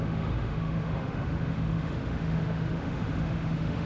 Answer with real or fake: fake